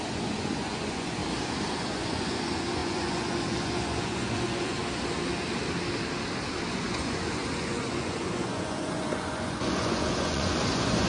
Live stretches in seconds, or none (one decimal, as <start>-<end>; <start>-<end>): 1.2-1.7; 4.8-6.7